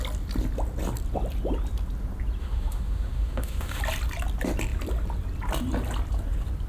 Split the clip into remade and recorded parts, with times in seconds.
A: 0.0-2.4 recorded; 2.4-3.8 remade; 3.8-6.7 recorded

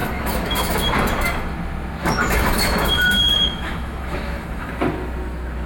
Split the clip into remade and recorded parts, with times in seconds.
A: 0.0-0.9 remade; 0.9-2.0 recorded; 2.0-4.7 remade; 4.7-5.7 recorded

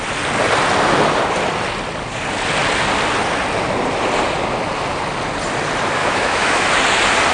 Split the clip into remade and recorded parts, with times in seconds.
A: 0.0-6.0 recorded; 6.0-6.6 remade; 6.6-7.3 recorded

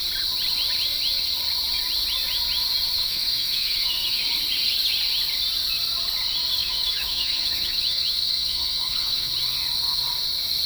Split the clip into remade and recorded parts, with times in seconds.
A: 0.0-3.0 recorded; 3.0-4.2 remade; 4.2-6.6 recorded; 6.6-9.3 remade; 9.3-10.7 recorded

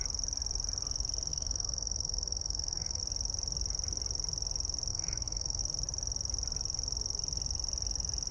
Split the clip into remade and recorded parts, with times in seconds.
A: 0.0-1.3 recorded; 1.3-3.0 remade; 3.0-4.9 recorded; 4.9-5.6 remade; 5.6-8.3 recorded